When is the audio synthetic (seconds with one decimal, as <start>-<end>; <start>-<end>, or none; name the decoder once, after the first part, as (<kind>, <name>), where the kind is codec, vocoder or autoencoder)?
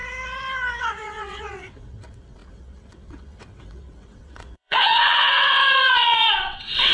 0.8-6.9 (vocoder, WaveNeXt)